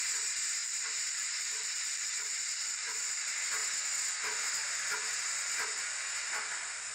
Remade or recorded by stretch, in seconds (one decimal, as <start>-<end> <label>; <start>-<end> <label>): 0.0-0.6 recorded; 0.6-3.2 remade; 3.2-6.9 recorded